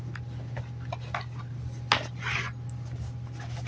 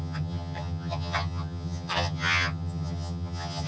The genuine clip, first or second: first